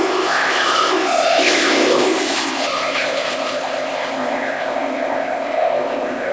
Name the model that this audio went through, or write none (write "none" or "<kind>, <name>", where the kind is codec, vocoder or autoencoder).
codec, ZipCodec